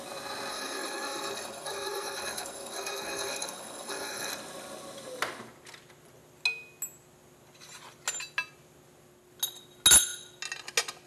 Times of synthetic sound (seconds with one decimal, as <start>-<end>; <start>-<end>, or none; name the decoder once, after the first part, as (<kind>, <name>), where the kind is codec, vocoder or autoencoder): 0.5-4.3 (codec, SNAC)